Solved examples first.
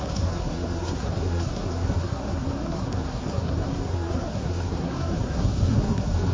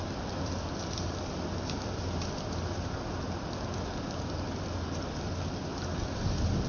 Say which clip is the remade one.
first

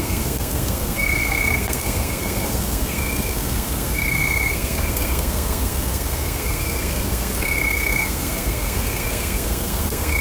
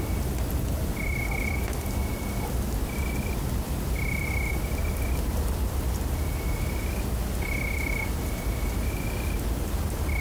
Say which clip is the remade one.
first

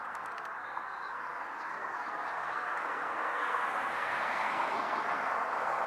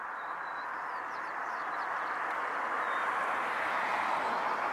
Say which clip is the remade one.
first